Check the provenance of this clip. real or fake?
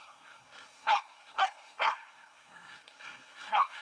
fake